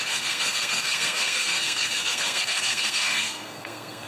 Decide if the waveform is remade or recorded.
remade